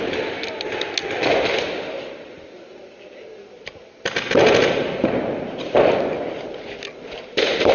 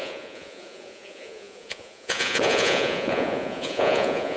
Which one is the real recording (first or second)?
first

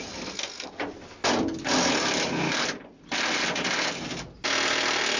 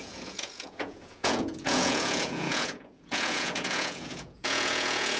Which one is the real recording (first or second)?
first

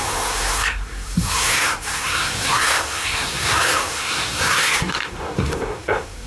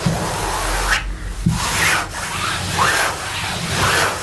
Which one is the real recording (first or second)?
second